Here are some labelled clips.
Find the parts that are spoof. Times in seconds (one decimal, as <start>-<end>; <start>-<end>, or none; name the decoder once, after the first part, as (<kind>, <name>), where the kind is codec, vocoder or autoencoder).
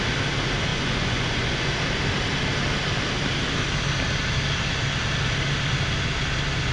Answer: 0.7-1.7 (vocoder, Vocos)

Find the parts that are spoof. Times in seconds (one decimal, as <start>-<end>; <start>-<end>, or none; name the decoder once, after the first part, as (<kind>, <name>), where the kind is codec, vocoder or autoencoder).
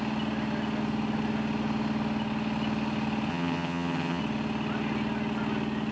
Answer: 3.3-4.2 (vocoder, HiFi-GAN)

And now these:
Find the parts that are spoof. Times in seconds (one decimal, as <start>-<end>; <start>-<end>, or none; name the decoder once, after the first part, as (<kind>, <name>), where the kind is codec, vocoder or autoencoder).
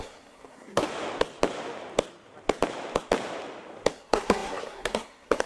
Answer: 0.0-0.9 (codec, SNAC); 3.9-5.5